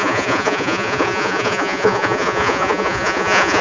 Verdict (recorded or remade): remade